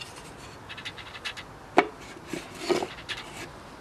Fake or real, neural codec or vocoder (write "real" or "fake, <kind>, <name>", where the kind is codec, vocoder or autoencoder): real